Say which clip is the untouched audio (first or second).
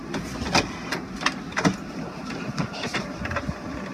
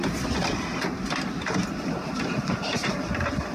first